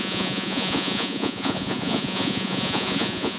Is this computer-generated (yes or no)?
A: yes